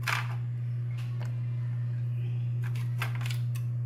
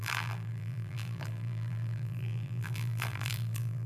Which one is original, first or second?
first